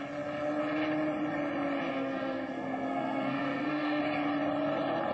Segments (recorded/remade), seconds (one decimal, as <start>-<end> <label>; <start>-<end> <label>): 0.0-1.9 recorded; 1.9-4.0 remade; 4.0-5.1 recorded